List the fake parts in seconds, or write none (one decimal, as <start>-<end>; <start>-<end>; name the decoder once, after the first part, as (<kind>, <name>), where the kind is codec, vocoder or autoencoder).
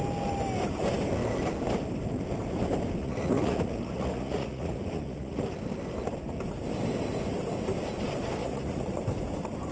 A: 3.0-5.4 (vocoder, Vocos); 8.4-9.0